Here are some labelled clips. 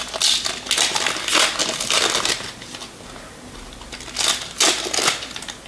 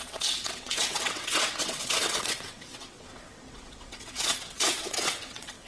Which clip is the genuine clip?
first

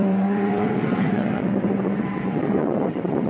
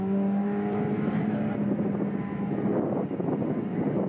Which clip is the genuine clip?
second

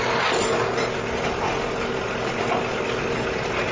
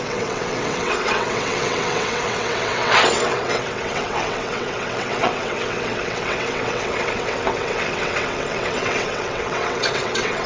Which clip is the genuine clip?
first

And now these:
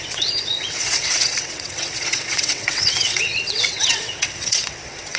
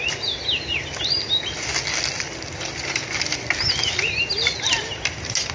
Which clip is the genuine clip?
second